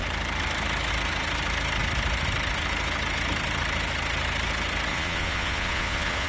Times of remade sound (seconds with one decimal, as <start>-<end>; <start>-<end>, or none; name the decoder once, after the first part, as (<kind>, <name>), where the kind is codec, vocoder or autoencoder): 4.9-6.3 (vocoder, Vocos)